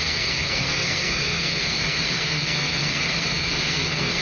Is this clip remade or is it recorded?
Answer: remade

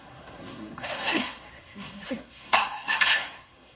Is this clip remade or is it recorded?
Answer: remade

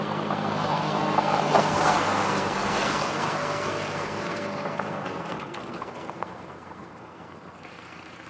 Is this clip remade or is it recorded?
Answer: remade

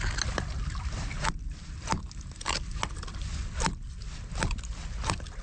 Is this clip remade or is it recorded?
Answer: recorded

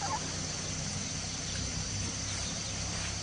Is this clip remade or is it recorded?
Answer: recorded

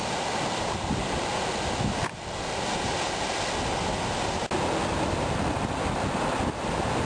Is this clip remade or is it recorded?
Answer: recorded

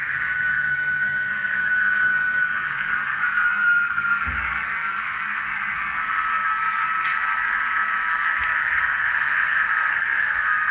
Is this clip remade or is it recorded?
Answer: remade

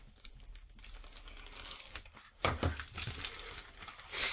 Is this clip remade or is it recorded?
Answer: recorded